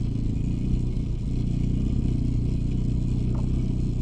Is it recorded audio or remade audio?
recorded